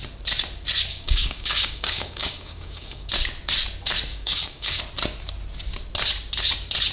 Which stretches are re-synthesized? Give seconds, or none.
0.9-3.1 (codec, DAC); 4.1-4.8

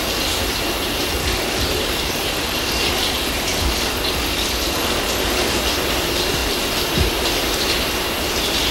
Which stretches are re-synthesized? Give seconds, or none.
1.2-5.6 (codec, DAC)

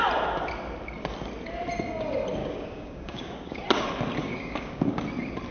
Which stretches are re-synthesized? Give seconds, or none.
2.4-3.6 (codec, DAC); 4.2-5.0

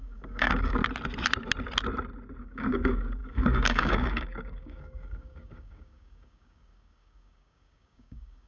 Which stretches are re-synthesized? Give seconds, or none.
0.0-0.8 (codec, DAC); 2.4-8.5

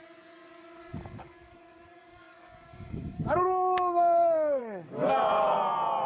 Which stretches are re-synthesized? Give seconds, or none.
0.9-4.6 (codec, DAC)

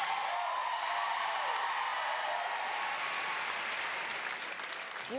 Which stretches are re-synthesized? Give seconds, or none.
none

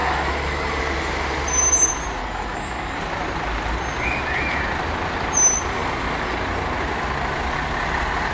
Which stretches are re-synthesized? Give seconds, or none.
0.0-0.8 (codec, DAC); 2.2-3.0